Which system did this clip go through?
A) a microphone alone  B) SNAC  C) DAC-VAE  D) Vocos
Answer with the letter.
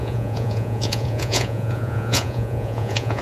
D